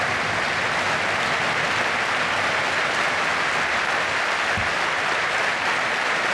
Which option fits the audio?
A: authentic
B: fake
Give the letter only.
A